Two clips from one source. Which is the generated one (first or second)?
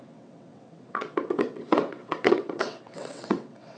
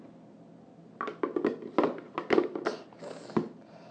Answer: first